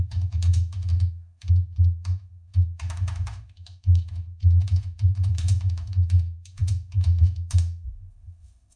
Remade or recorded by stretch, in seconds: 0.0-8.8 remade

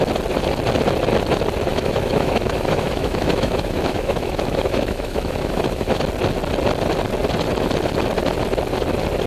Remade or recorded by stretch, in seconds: 0.0-1.7 recorded; 1.7-6.0 remade; 6.0-9.3 recorded